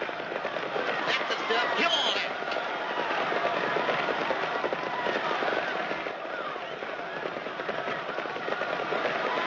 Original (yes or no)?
yes